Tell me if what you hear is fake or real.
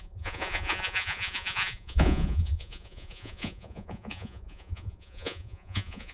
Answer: fake